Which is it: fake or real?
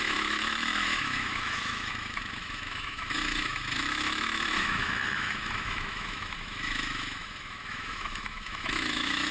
fake